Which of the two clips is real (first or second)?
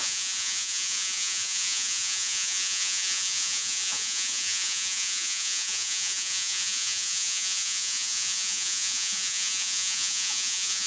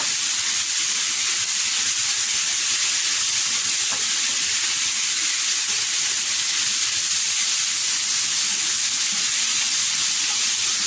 second